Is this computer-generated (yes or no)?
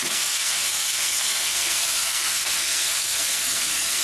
yes